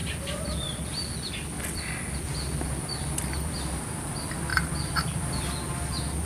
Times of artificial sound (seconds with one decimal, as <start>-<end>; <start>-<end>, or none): none